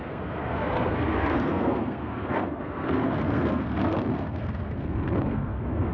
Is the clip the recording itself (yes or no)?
no